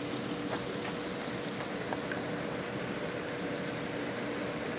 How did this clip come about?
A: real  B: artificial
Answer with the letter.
A